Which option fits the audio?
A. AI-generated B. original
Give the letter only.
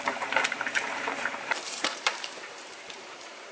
A